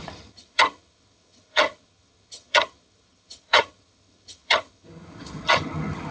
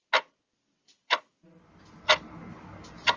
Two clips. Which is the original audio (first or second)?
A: second